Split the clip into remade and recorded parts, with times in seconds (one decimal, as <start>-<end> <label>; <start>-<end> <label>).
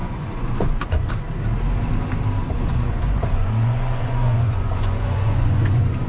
0.0-1.1 remade; 1.1-2.4 recorded; 2.4-6.1 remade